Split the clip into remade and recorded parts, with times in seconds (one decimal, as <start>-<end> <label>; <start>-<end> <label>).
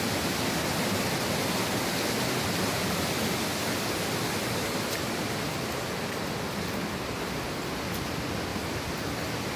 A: 0.0-2.7 recorded; 2.7-3.3 remade; 3.3-8.5 recorded; 8.5-9.6 remade